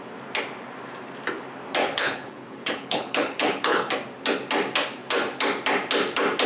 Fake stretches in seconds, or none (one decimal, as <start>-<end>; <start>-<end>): 1.8-3.9